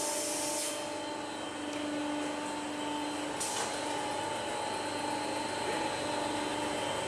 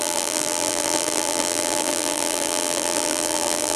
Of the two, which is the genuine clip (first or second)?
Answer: first